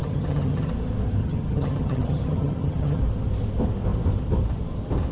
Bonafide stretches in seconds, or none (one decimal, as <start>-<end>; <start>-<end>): 0.7-1.2; 3.0-5.1